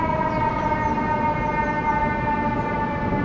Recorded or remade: recorded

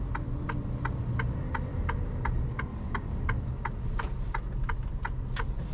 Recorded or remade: recorded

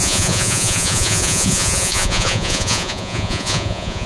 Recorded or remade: remade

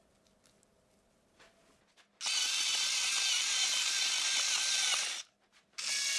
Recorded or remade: recorded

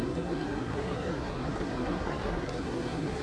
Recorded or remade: remade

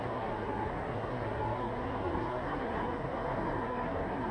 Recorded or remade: remade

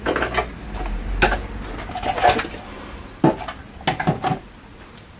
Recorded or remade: recorded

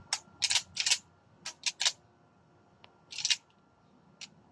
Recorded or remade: recorded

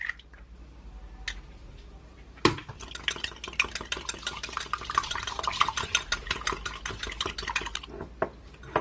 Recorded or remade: recorded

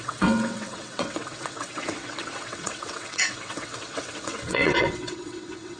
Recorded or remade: remade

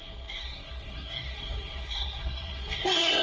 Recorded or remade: remade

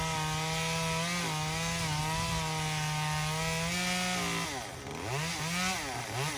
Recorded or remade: recorded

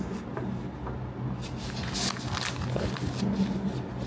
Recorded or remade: recorded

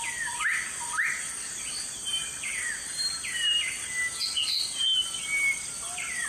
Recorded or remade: recorded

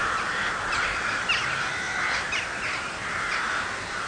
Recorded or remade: recorded